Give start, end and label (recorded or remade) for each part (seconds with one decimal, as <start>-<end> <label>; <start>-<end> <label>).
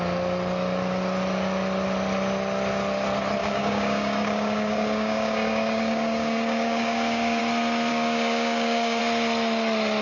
0.0-3.4 recorded; 3.4-7.4 remade; 7.4-7.9 recorded; 7.9-9.0 remade; 9.0-10.0 recorded